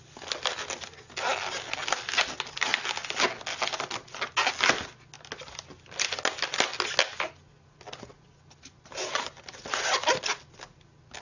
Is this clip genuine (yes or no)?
yes